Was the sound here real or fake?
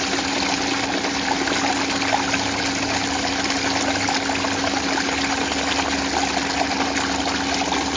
real